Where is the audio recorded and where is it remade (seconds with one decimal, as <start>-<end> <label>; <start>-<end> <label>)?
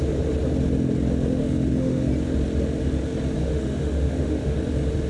0.0-1.4 recorded; 1.4-2.1 remade; 2.1-3.4 recorded; 3.4-4.6 remade; 4.6-5.1 recorded